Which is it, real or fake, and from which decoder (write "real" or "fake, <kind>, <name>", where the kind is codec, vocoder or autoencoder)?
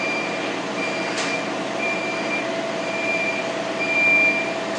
fake, vocoder, BigVGAN v2